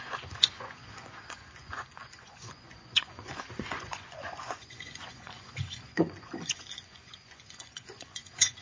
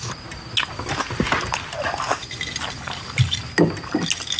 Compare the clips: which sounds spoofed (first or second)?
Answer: first